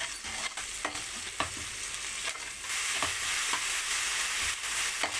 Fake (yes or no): no